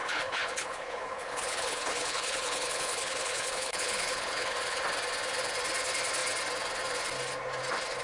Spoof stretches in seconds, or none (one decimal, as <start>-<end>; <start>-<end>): 0.0-4.8